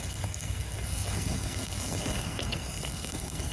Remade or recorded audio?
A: remade